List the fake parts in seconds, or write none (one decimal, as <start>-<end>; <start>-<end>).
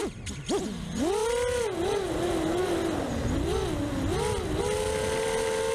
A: none